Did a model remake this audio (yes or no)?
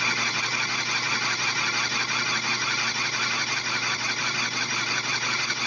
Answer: no